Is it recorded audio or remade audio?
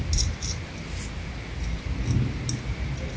recorded